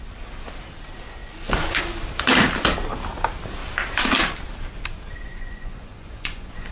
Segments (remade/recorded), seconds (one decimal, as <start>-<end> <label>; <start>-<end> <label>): 0.0-1.2 recorded; 1.2-1.8 remade; 1.8-5.3 recorded; 5.3-6.7 remade